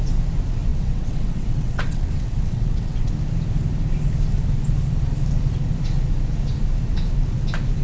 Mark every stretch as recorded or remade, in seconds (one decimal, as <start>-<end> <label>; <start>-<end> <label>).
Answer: 0.0-0.7 recorded; 0.7-3.1 remade; 3.1-7.8 recorded